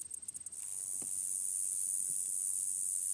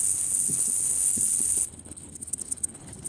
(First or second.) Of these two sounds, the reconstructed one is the second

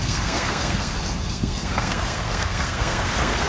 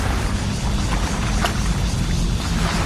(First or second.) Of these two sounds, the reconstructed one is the first